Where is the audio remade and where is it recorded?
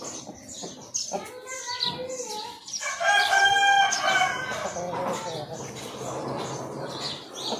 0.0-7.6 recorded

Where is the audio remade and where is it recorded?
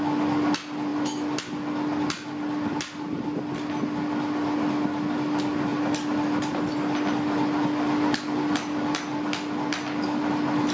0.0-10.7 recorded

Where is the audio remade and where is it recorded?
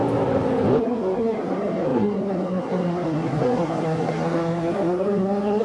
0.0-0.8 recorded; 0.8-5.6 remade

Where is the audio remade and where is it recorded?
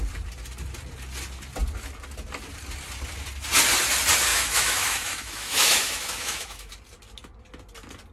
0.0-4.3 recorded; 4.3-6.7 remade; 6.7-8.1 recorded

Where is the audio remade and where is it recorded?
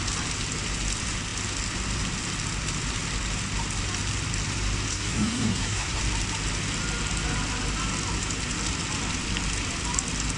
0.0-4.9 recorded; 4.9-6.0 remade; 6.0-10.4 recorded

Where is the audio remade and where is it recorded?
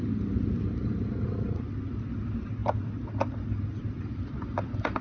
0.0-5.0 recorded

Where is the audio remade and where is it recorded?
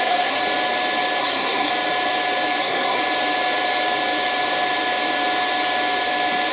0.0-0.4 remade; 0.4-1.2 recorded; 1.2-1.7 remade; 1.7-2.6 recorded; 2.6-3.0 remade; 3.0-6.5 recorded